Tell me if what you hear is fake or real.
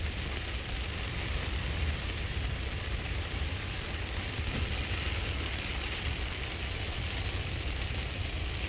real